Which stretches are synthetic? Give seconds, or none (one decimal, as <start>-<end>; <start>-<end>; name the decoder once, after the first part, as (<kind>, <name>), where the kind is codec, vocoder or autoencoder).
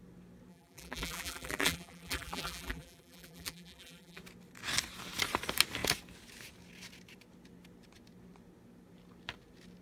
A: 0.5-4.2 (vocoder, BigVGAN v2)